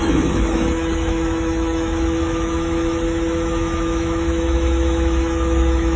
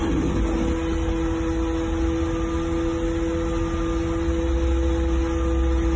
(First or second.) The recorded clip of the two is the second